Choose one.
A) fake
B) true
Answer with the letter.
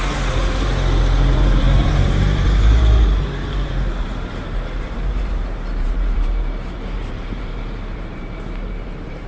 A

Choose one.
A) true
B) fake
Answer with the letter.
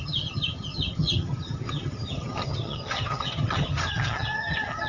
B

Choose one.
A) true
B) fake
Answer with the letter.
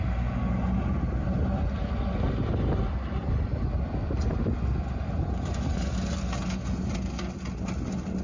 A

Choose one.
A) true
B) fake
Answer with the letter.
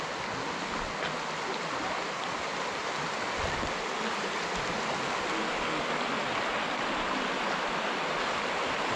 A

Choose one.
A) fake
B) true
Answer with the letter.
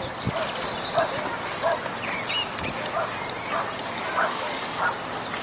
A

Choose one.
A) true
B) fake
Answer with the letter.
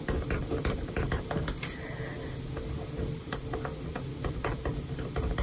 A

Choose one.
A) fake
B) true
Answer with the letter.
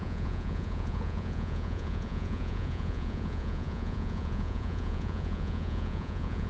A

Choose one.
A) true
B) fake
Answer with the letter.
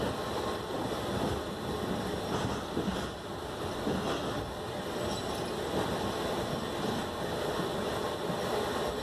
A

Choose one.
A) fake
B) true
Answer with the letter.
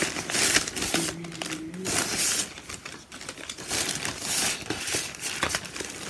B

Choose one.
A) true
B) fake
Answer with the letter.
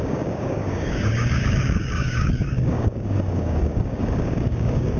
B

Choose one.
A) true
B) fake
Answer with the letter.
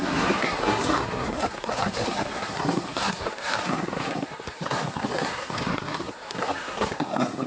B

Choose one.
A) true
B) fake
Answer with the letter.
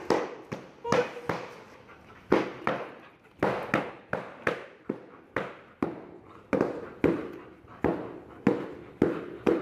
A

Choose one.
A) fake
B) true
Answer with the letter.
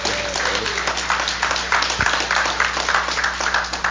B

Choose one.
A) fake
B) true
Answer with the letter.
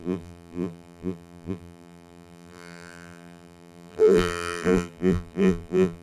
A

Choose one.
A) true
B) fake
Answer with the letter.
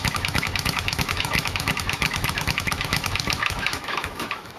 B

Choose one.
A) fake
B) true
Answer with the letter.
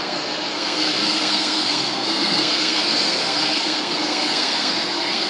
A